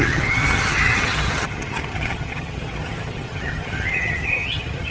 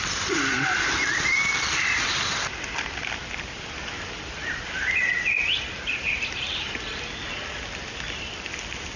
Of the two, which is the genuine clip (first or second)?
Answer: second